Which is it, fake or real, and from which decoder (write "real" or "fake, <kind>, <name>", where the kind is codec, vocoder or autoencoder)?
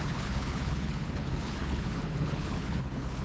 fake, codec, HILCodec